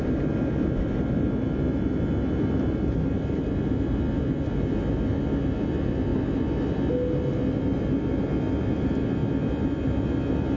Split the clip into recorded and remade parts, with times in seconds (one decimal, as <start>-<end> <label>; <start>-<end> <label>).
0.0-10.6 recorded